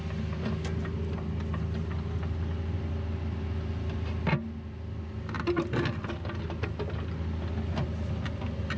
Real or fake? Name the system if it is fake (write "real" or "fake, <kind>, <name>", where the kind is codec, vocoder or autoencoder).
real